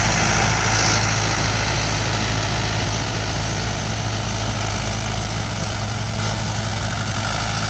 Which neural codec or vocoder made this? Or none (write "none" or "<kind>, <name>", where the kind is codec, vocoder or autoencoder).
none